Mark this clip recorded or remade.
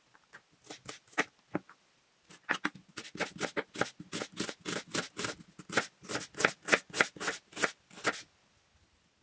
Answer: recorded